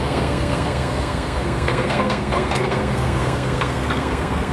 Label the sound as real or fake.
fake